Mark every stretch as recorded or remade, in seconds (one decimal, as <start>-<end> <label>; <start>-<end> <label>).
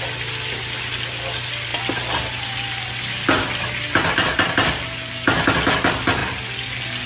0.0-7.1 recorded